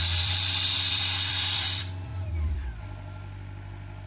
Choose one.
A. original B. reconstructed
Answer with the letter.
B